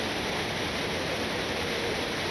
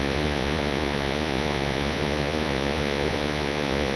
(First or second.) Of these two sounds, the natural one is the first